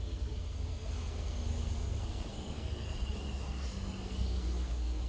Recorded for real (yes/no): no